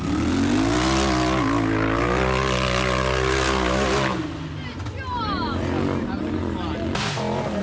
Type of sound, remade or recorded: recorded